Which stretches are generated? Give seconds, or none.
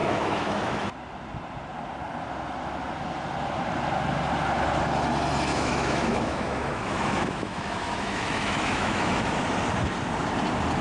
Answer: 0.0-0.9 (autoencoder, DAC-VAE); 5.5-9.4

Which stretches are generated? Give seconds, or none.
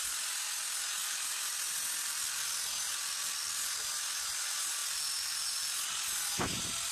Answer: none